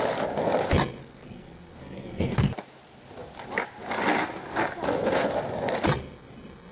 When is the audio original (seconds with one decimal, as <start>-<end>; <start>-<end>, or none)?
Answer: 0.0-1.0; 2.5-6.7